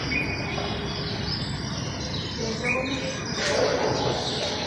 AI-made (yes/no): no